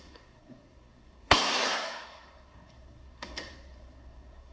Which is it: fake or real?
fake